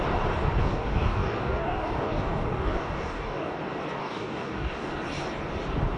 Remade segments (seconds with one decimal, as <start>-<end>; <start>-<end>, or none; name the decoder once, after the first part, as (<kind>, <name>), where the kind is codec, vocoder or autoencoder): 0.6-3.6 (codec, DAC); 4.0-4.9